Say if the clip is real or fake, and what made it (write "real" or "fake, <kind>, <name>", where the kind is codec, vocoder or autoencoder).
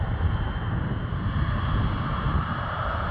real